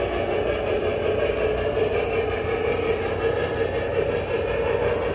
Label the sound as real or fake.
real